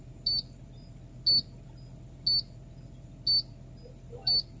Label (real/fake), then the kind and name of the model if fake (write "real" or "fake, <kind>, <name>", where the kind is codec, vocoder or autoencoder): real